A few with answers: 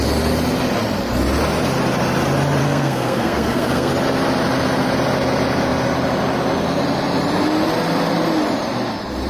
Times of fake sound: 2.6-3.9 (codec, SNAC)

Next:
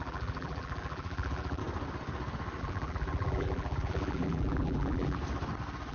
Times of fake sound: 0.0-1.6 (vocoder, BigVGAN v2); 2.6-5.2

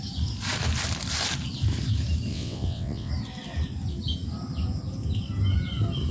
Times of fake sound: 2.3-3.1 (vocoder, WaveNeXt)